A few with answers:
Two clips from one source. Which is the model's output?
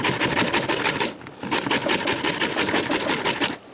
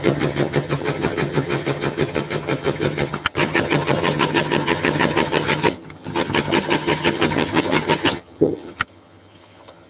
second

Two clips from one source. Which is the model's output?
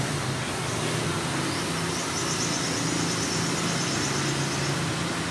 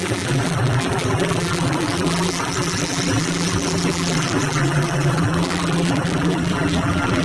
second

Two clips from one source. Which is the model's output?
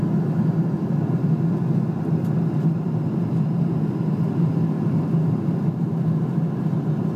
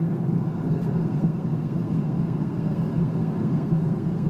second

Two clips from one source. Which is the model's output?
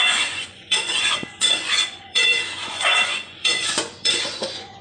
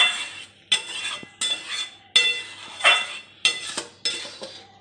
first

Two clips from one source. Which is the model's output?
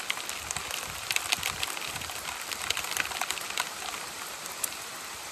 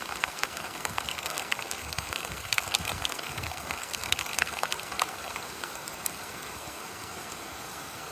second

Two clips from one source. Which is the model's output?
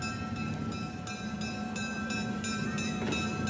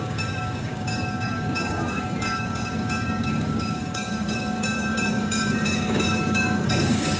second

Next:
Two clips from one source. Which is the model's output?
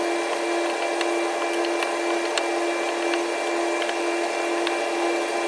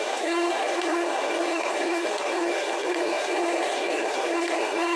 second